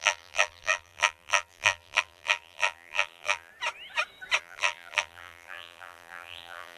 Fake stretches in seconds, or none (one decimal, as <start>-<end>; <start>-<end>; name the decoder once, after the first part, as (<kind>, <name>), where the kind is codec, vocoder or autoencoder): 0.0-3.5 (vocoder, BigVGAN v2); 4.4-6.8